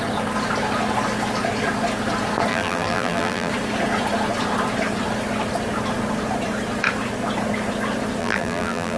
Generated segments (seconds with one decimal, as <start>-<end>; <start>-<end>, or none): 2.5-3.5; 8.2-9.0